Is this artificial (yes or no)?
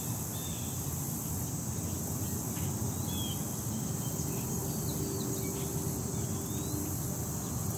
no